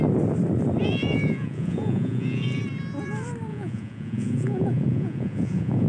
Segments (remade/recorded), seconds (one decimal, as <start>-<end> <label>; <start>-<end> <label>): 0.0-0.8 recorded; 0.8-2.6 remade; 2.6-3.5 recorded; 3.5-5.9 remade